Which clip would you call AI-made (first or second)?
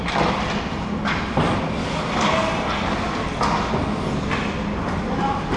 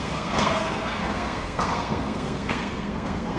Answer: second